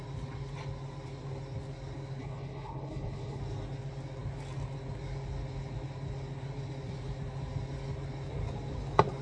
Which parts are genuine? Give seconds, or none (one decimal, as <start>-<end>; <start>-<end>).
0.0-2.2; 3.4-9.2